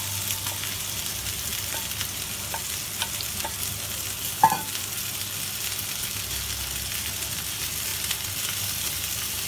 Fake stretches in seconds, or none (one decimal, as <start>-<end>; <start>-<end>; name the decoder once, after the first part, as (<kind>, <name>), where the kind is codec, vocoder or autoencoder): none